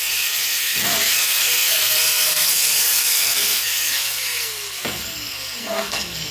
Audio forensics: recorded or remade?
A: remade